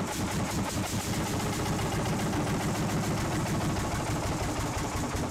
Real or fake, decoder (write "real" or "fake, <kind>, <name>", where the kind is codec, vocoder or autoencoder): real